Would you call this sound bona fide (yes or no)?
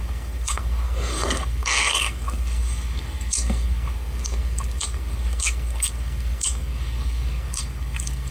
no